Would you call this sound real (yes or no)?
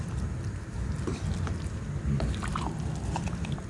yes